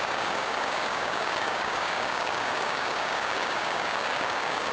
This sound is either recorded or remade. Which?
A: remade